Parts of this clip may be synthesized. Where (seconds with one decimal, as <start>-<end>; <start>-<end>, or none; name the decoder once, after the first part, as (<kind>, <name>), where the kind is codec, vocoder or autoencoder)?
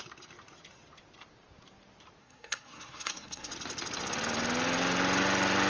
2.2-3.5 (codec, SNAC)